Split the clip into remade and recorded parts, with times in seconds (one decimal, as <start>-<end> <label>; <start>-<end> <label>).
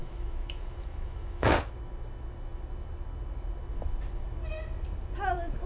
0.0-1.5 remade; 1.5-5.7 recorded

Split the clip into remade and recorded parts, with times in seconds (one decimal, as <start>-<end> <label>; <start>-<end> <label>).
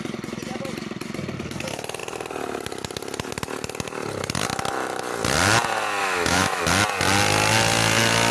0.0-6.0 recorded; 6.0-6.6 remade; 6.6-8.3 recorded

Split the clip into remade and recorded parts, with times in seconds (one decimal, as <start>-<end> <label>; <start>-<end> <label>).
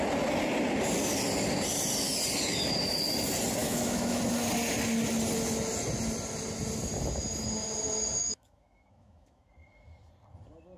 0.0-3.6 recorded; 3.6-4.2 remade; 4.2-8.2 recorded; 8.2-9.5 remade; 9.5-10.8 recorded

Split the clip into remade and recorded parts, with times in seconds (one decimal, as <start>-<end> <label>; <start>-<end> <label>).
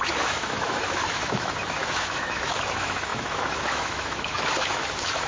0.0-5.3 remade